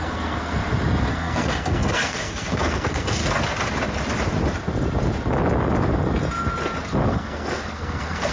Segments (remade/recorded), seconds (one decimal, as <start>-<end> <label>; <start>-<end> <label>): 0.0-0.6 remade; 0.6-1.1 recorded; 1.1-3.2 remade; 3.2-7.1 recorded; 7.1-8.3 remade